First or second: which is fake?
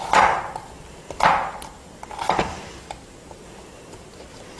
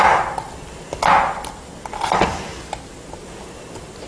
first